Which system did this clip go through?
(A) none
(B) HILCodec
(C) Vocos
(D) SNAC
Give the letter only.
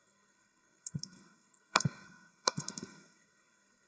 D